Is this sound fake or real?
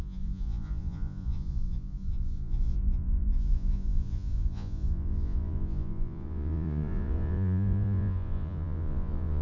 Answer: fake